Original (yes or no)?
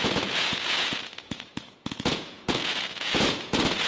no